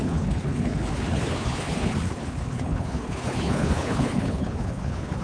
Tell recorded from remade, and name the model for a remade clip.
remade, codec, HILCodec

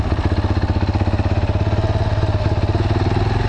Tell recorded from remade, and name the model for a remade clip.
recorded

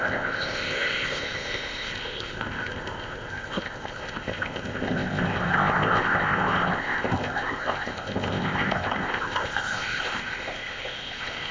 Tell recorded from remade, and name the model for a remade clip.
remade, codec, ZipCodec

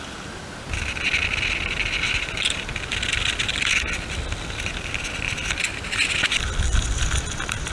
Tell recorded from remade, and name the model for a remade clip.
recorded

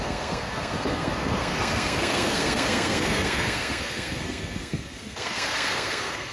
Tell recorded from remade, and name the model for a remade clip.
remade, codec, SNAC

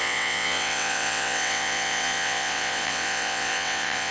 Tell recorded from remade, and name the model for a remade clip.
remade, vocoder, WaveNeXt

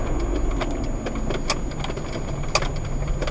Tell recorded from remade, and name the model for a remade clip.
recorded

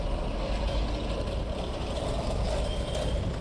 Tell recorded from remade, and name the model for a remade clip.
recorded